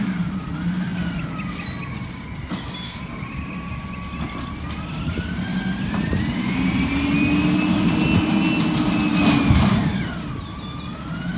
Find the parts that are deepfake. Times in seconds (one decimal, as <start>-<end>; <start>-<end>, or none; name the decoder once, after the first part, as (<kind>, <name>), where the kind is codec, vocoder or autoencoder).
none